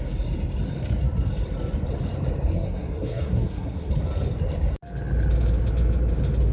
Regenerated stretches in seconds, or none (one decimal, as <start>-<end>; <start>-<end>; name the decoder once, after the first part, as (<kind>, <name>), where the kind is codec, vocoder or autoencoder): 2.5-3.9 (codec, SNAC)